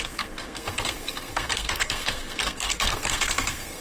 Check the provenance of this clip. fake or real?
fake